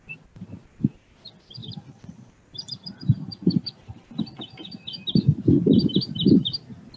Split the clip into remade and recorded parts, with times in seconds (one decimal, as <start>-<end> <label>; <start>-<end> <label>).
0.0-1.6 recorded; 1.6-4.9 remade; 4.9-7.0 recorded